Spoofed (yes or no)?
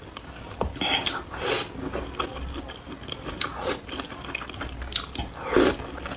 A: no